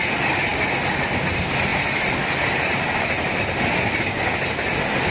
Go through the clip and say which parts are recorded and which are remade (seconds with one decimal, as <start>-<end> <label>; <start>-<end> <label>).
0.0-5.1 recorded